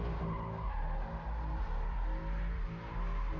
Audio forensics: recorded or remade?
recorded